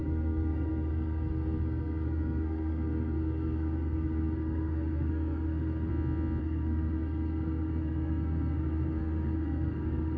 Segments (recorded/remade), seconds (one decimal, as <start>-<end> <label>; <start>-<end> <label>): 0.0-5.9 remade; 5.9-6.4 recorded; 6.4-10.2 remade